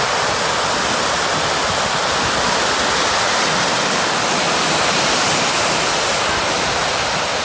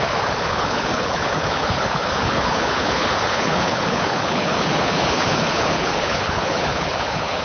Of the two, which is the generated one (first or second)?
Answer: second